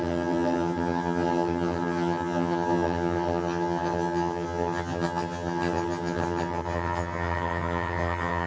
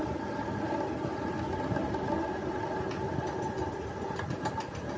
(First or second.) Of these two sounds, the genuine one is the second